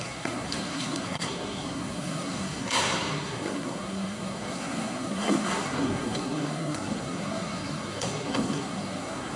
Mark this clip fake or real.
fake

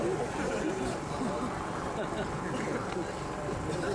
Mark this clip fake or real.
fake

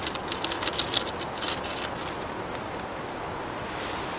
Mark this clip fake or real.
real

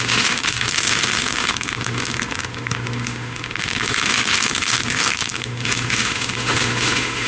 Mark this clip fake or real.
fake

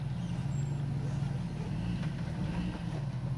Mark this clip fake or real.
real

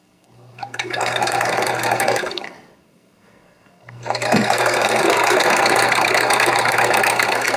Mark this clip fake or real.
fake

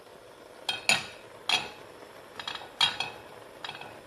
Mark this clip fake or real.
real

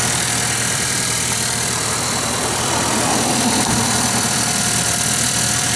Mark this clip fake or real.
fake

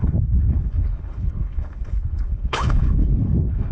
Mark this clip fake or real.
fake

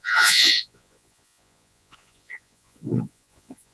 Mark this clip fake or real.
fake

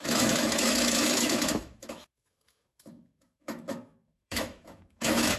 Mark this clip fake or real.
fake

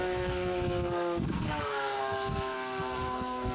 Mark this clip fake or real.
fake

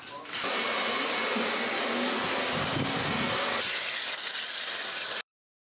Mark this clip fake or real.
real